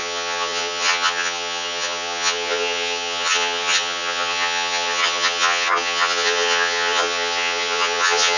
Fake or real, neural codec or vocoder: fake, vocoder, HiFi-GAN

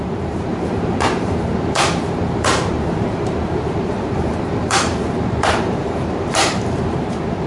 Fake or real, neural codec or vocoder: fake, vocoder, BigVGAN v2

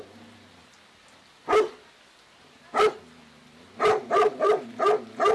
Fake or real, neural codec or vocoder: real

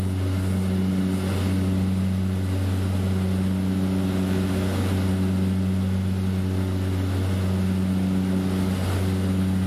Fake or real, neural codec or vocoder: real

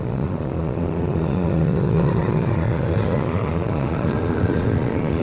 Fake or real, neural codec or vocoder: fake, vocoder, Vocos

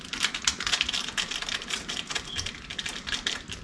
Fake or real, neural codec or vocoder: real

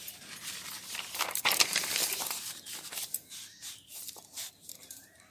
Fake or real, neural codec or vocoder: fake, vocoder, BigVGAN v2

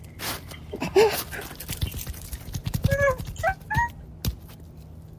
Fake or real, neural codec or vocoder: real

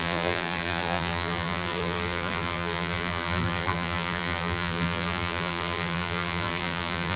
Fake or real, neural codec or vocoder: fake, vocoder, BigVGAN v2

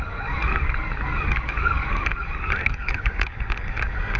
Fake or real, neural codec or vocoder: fake, codec, DAC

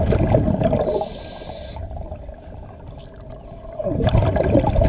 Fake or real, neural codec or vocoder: fake, vocoder, BigVGAN v2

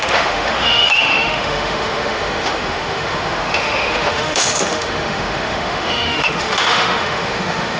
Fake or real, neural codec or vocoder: fake, autoencoder, DAC-VAE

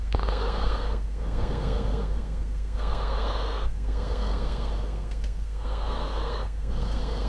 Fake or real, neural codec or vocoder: fake, codec, SNAC